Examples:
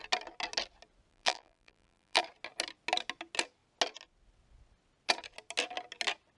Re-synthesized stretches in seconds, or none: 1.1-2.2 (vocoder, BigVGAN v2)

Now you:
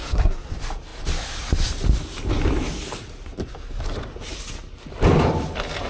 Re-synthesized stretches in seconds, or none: 0.0-0.5 (codec, SNAC)

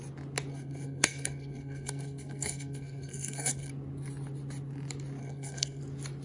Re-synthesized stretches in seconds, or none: 0.5-3.7 (codec, SNAC); 5.2-5.8

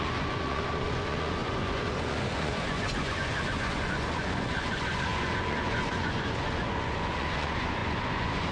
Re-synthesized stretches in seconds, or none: 0.0-8.5 (vocoder, Vocos)

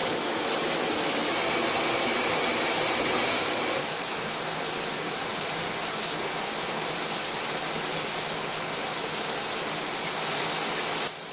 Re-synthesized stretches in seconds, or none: 0.0-1.1 (autoencoder, DAC-VAE); 3.8-4.4